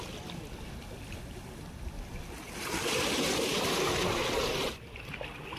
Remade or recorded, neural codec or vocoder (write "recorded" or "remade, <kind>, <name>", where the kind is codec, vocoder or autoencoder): recorded